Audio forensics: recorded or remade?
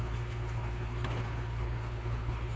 remade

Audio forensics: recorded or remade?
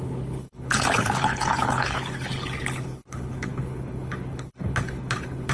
remade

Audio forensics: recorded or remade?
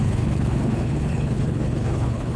remade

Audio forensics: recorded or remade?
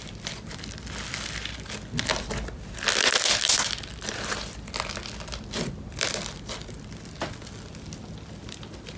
recorded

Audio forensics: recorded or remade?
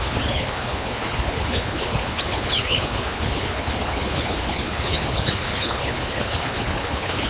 remade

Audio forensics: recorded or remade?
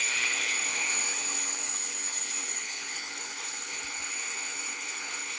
remade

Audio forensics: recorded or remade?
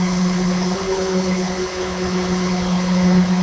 remade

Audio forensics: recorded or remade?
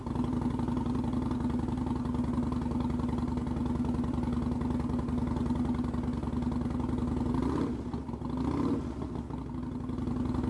recorded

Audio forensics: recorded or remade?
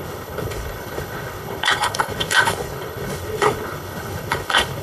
remade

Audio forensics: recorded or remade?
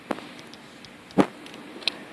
recorded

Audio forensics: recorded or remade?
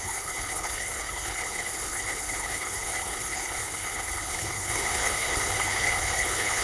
remade